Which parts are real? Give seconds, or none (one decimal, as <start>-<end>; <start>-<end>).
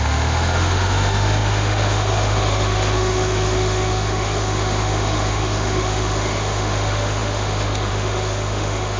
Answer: none